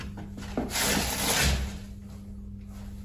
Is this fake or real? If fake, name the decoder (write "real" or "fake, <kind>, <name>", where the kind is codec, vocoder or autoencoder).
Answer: real